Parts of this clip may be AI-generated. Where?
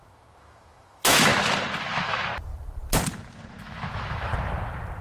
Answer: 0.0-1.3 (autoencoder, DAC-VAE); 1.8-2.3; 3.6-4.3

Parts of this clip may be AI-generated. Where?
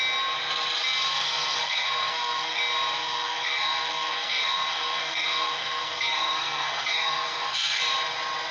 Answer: 1.1-2.6 (codec, SNAC); 3.0-7.8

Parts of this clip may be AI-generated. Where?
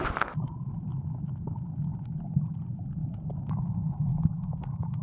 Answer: 4.1-5.0 (codec, DAC)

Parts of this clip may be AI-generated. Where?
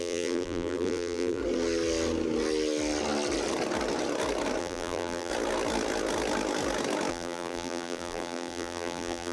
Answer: 0.0-1.4 (vocoder, BigVGAN v2); 4.6-5.3; 7.1-9.3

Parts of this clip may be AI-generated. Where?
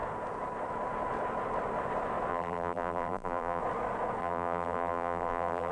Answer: 2.3-3.6 (vocoder, BigVGAN v2); 4.2-5.7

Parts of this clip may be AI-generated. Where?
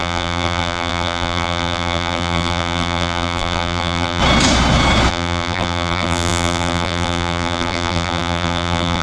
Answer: 0.0-4.2 (vocoder, BigVGAN v2); 5.1-9.0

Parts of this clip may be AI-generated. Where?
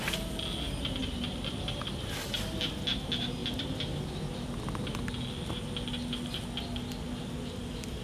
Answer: 3.4-4.6 (vocoder, BigVGAN v2)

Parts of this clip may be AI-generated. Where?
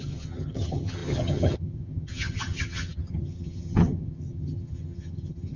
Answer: 0.0-5.6 (vocoder, HiFi-GAN)